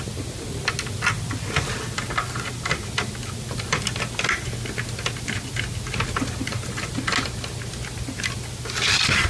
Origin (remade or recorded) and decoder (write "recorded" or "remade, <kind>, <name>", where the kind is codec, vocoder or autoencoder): recorded